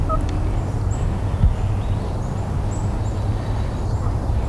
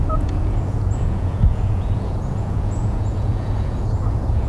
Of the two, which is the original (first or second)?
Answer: first